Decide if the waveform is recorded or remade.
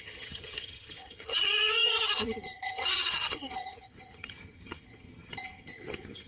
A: remade